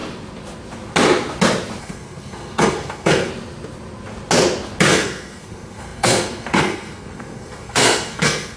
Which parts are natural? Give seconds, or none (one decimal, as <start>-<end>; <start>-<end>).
0.0-1.8; 3.3-4.9

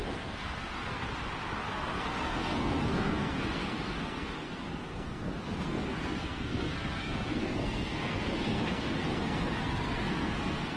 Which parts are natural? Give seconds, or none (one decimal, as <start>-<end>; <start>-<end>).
1.1-1.6

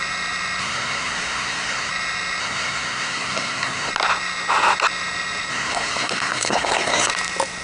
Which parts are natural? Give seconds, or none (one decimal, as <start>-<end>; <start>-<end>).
0.0-0.6; 1.9-2.4; 3.9-5.5; 7.1-7.6

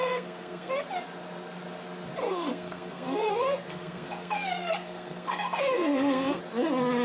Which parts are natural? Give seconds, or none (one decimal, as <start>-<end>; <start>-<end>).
0.7-2.2; 6.4-7.0